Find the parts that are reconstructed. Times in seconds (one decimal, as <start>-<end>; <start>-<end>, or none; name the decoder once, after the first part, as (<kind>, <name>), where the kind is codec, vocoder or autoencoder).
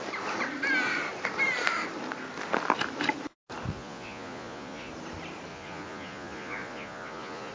3.7-4.9 (vocoder, Vocos); 5.5-7.5